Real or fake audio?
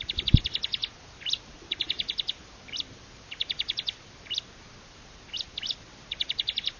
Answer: real